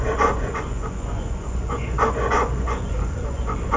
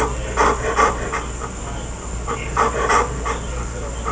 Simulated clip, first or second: first